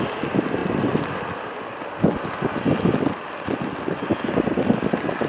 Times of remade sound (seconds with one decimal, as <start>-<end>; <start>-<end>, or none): none